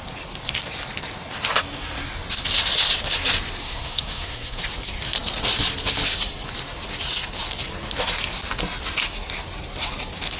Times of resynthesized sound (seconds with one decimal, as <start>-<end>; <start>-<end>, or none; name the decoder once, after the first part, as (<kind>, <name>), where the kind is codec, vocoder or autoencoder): 3.6-4.6 (codec, SNAC)